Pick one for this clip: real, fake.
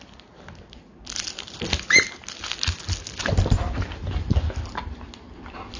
real